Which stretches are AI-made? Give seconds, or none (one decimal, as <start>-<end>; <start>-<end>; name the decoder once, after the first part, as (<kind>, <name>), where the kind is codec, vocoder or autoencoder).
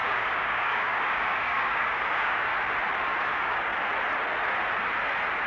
0.0-2.5 (codec, DAC); 3.2-3.7